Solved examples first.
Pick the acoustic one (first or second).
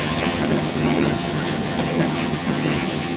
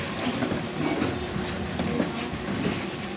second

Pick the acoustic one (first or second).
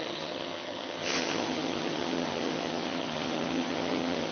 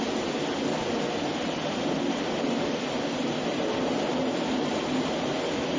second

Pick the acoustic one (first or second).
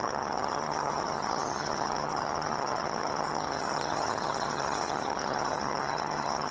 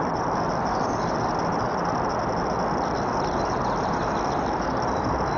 second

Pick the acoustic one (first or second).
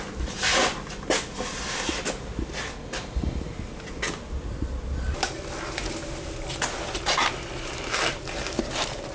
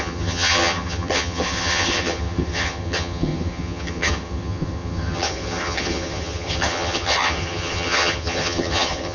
first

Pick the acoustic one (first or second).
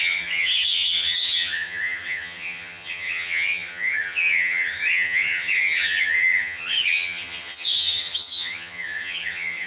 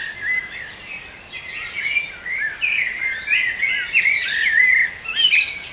second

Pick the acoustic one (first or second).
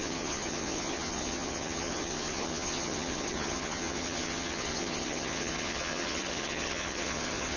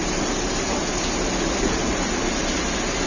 second